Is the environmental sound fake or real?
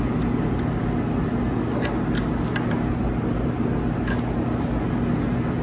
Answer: real